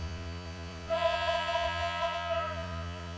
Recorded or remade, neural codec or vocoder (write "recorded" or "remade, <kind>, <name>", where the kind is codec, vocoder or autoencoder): remade, vocoder, Vocos